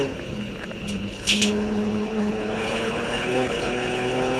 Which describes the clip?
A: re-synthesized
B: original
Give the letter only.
A